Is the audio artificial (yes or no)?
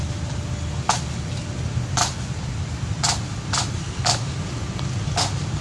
no